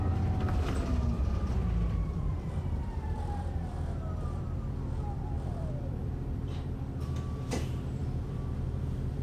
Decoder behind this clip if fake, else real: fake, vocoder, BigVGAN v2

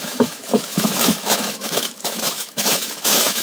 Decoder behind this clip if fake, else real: fake, autoencoder, DAC-VAE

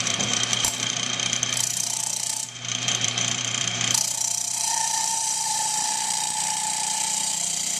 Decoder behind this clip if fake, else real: fake, vocoder, BigVGAN v2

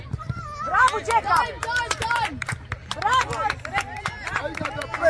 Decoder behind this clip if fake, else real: real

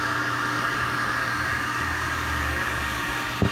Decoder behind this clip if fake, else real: fake, codec, DAC